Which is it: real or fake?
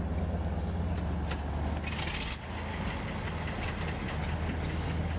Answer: real